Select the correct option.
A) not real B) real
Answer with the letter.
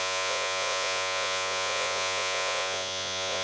A